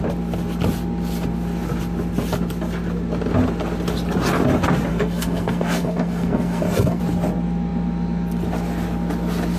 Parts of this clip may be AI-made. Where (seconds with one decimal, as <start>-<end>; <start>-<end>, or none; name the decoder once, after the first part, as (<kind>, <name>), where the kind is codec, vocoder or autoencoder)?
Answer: 4.9-7.0 (codec, SNAC)